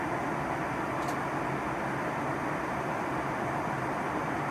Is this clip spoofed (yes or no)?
no